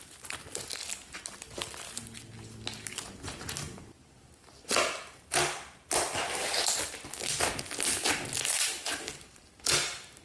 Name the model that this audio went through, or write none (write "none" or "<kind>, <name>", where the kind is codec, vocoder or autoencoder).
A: none